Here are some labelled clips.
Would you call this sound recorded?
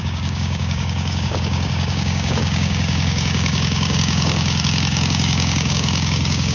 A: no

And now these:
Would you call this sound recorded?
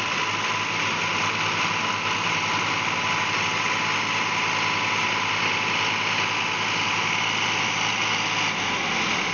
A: yes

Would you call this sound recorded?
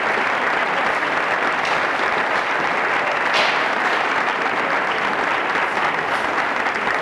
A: yes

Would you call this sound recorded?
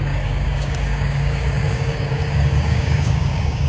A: no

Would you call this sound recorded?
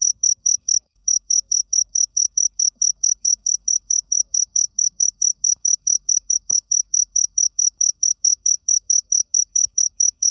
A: no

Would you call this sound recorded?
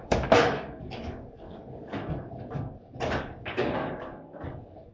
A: no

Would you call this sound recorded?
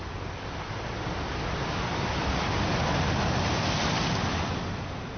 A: yes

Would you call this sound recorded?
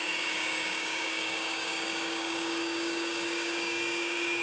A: no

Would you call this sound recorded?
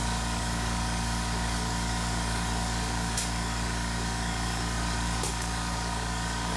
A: no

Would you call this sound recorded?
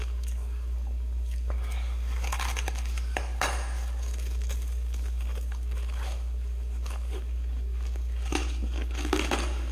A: no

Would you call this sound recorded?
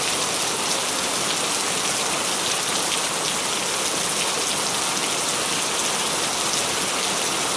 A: yes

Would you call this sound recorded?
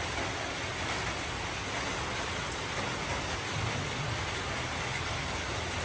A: yes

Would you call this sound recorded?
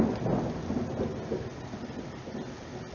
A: yes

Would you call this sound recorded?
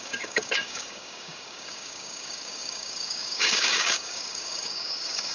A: no